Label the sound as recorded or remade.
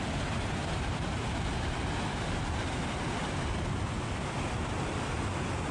recorded